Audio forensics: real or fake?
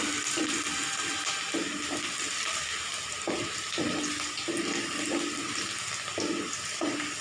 real